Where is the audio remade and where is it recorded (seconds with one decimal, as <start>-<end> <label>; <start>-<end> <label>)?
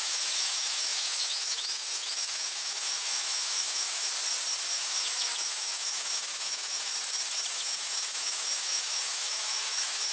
0.0-4.1 remade; 4.1-4.7 recorded; 4.7-6.9 remade; 6.9-7.5 recorded; 7.5-10.1 remade